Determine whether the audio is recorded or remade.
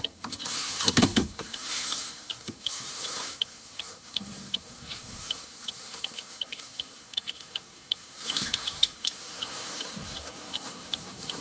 remade